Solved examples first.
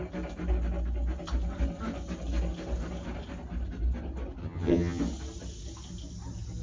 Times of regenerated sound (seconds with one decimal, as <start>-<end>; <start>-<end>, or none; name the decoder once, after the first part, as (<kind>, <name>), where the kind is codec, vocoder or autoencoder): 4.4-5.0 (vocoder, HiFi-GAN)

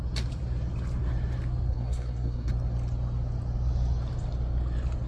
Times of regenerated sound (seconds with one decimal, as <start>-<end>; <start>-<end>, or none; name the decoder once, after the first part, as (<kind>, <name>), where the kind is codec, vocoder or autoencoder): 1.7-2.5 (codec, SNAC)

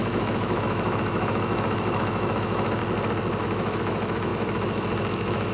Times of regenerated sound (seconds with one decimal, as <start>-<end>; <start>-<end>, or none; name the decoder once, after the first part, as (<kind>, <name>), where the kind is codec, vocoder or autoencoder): 0.0-2.8 (autoencoder, DAC-VAE); 3.4-5.5

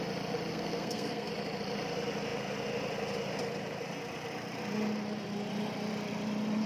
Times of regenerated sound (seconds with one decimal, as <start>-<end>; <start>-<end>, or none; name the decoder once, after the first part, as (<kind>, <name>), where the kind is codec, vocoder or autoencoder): 0.5-1.3 (codec, SNAC)